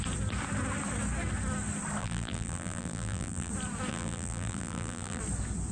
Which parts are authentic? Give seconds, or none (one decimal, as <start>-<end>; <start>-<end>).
0.0-2.0; 3.5-3.9; 5.2-5.7